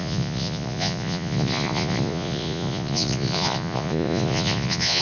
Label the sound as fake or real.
fake